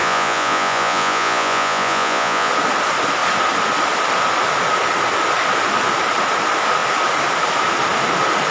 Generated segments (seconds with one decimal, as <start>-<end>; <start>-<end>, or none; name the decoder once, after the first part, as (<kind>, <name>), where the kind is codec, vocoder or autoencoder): 0.0-2.5 (vocoder, Vocos)